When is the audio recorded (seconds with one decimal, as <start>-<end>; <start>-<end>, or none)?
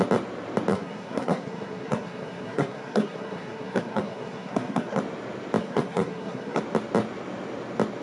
0.0-0.7; 5.0-5.6; 6.6-8.0